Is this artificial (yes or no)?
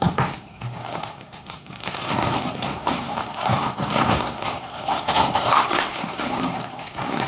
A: yes